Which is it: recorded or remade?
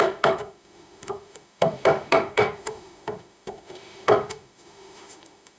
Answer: remade